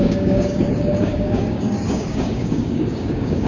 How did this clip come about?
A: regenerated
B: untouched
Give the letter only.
A